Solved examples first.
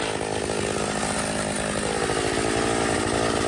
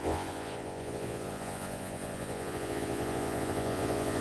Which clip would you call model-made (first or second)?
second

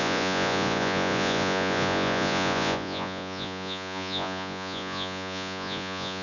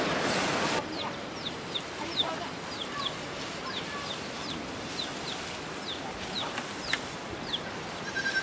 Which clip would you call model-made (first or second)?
first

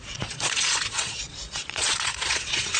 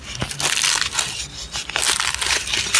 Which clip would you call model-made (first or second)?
first